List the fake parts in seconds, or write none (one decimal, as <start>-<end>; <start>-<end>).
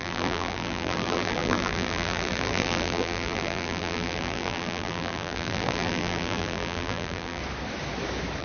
0.0-7.4